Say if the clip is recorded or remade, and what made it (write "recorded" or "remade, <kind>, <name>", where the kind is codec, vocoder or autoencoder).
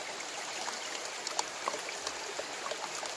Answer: recorded